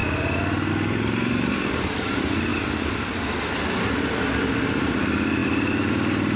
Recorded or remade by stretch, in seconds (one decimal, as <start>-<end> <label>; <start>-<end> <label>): 0.0-0.7 recorded; 0.7-2.5 remade; 2.5-4.1 recorded; 4.1-5.4 remade; 5.4-6.4 recorded